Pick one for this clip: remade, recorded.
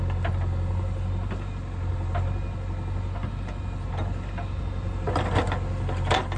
recorded